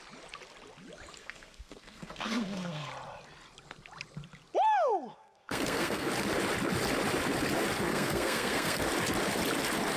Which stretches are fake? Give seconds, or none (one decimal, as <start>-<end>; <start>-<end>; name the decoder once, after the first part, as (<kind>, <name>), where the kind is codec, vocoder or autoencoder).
1.2-2.9 (codec, SNAC); 5.1-6.1; 7.9-8.8